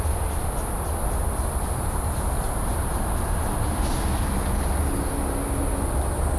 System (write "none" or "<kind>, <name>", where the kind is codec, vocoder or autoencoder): none